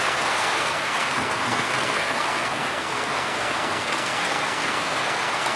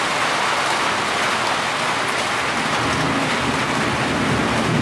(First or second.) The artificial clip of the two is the first